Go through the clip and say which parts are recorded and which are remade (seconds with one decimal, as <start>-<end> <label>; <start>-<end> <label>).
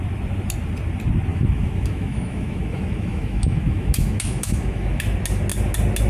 0.0-1.3 recorded; 1.3-5.0 remade; 5.0-6.1 recorded